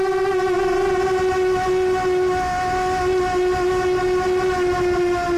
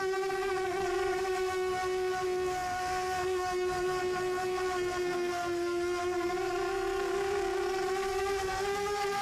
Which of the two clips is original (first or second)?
first